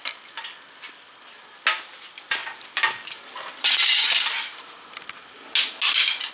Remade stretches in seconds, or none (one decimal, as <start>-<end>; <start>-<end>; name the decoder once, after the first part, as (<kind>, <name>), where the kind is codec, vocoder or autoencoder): none